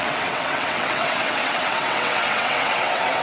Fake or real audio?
fake